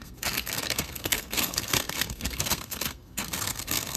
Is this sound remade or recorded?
remade